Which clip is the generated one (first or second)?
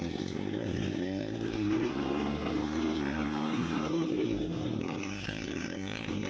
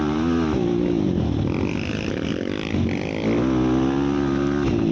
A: first